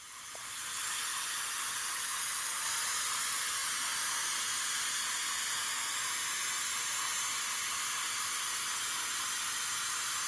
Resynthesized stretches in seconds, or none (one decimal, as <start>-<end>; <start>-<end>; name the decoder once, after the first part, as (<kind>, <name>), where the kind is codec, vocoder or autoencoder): none